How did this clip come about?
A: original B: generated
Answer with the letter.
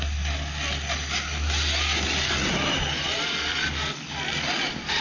A